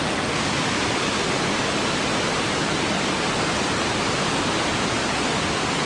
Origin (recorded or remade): recorded